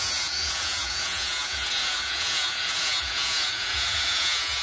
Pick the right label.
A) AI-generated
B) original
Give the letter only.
A